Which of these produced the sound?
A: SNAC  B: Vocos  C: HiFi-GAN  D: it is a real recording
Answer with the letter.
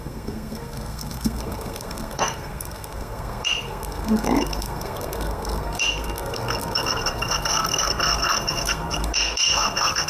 A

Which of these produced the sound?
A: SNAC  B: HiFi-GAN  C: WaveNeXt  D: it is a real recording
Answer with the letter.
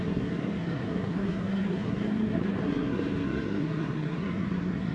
A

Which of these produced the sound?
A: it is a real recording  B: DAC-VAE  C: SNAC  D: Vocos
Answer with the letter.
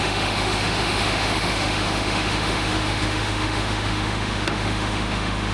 B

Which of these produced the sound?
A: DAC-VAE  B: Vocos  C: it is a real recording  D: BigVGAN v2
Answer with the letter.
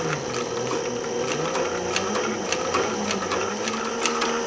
C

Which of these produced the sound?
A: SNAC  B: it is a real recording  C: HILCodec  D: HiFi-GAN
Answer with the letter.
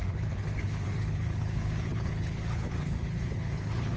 C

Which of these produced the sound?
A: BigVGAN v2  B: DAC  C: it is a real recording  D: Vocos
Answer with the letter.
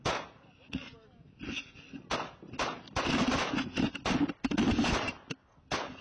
C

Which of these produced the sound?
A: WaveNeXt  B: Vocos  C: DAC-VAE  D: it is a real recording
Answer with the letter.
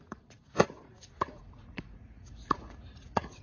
B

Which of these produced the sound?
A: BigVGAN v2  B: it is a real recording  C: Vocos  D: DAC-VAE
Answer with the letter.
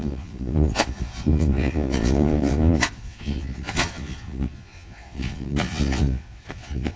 C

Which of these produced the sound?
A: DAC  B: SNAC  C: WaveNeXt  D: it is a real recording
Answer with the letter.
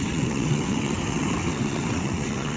C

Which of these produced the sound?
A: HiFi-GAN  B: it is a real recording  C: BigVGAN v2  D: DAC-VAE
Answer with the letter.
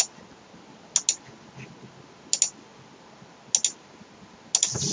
B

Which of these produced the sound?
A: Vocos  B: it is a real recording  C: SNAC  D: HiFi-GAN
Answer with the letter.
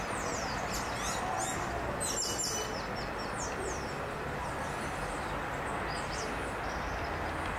B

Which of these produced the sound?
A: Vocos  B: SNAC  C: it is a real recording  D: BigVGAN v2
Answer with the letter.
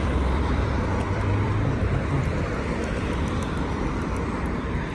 D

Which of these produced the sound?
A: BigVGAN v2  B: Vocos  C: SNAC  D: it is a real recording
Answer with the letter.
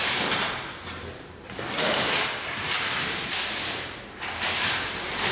A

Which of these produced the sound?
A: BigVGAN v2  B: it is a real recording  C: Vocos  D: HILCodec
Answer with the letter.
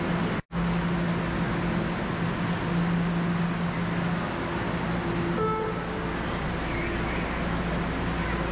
B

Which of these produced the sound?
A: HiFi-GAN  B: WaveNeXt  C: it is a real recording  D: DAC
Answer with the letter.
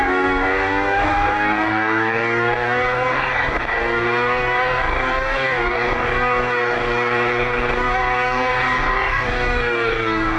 D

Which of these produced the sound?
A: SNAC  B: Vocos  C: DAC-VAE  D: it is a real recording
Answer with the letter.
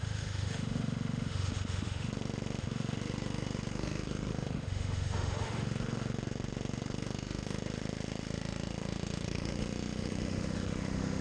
C